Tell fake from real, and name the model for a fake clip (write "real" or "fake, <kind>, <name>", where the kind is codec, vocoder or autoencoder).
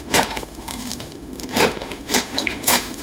fake, autoencoder, DAC-VAE